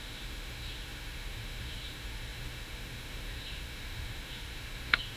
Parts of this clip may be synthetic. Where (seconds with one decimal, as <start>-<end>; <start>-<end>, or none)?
0.0-5.2